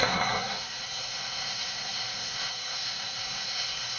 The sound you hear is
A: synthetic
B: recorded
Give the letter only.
A